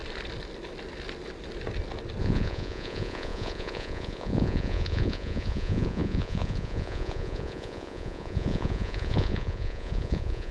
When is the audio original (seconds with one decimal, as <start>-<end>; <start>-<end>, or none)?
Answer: 0.0-2.2